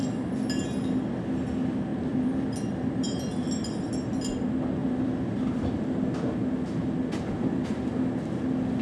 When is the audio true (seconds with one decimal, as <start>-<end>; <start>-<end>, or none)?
0.0-1.9; 3.9-4.8; 5.6-8.8